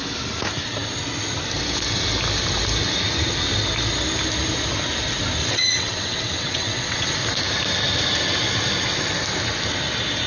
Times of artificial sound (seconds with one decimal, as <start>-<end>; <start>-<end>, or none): 5.4-7.1